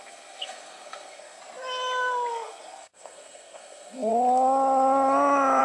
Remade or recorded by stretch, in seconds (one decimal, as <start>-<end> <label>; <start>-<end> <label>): 0.0-1.4 remade; 1.4-2.3 recorded; 2.3-4.1 remade; 4.1-5.6 recorded